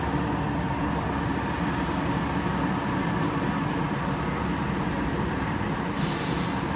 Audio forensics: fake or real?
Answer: real